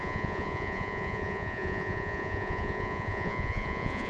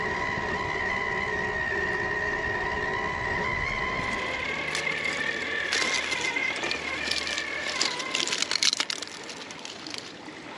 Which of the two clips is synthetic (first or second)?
first